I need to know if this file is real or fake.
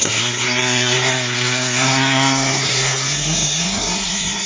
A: fake